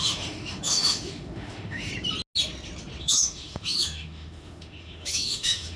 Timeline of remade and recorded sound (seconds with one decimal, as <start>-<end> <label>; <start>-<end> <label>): 0.0-1.9 remade; 1.9-3.0 recorded; 3.0-5.8 remade